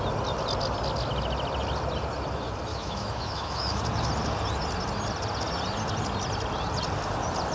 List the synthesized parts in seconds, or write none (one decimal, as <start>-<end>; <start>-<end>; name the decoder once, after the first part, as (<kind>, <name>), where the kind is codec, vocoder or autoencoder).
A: 2.7-3.8 (autoencoder, DAC-VAE)